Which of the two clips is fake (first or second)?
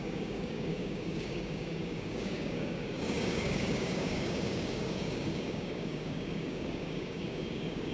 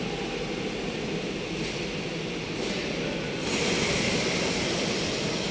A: first